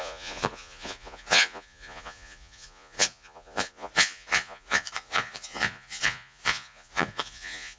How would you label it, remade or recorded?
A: remade